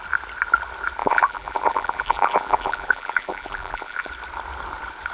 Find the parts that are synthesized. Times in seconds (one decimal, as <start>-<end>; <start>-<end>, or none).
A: 1.0-4.1